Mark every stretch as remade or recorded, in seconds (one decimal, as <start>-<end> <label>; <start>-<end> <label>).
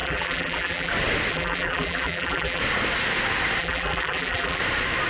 0.0-0.9 remade; 0.9-1.3 recorded; 1.3-2.6 remade; 2.6-3.6 recorded; 3.6-4.6 remade; 4.6-5.1 recorded